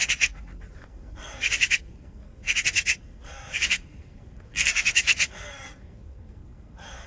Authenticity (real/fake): fake